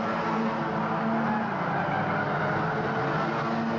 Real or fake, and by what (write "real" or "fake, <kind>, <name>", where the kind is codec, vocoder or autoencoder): real